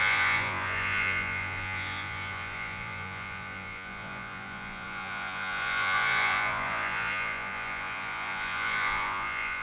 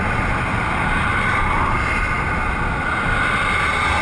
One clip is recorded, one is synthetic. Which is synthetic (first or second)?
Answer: first